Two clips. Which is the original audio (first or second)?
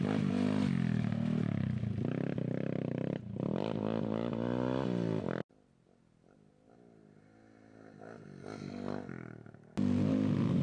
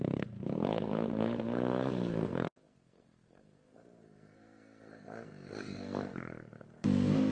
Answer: first